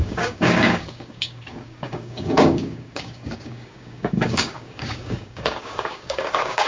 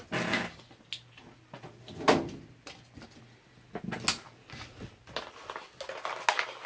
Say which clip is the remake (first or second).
first